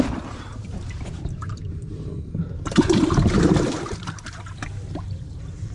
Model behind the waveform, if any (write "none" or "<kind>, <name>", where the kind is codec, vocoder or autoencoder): vocoder, BigVGAN v2